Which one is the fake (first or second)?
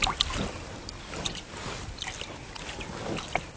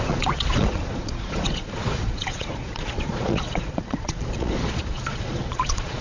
second